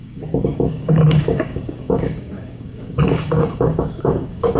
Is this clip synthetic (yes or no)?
yes